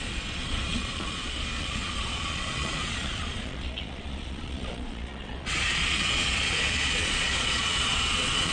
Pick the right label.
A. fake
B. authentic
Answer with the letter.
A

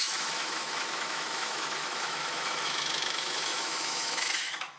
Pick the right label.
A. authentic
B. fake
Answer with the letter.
B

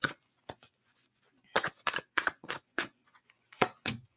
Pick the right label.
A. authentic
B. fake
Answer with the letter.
B